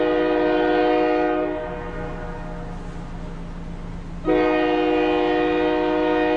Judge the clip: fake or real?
real